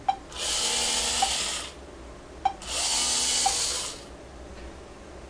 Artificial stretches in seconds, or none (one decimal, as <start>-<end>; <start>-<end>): none